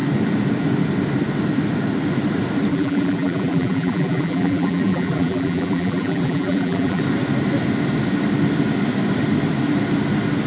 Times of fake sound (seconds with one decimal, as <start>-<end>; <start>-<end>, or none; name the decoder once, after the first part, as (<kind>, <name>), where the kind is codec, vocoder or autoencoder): 2.7-7.0 (vocoder, BigVGAN v2)